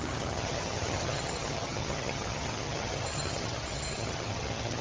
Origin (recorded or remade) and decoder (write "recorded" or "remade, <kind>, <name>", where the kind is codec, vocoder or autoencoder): remade, vocoder, HiFi-GAN